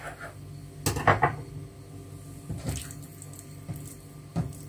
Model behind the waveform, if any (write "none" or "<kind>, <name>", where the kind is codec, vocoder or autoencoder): none